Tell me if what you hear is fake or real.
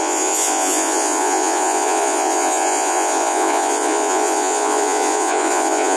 fake